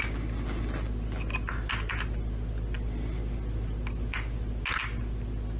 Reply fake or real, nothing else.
real